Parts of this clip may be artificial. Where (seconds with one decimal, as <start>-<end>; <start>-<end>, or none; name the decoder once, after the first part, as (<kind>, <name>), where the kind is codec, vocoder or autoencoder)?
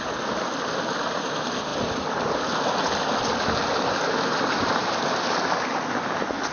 none